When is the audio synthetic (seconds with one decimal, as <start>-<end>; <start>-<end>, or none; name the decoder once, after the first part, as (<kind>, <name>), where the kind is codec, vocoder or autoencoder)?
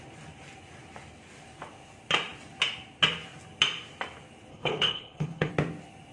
4.5-5.5 (codec, HILCodec)